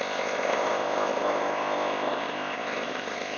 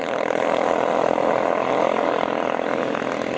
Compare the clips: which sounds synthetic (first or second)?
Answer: first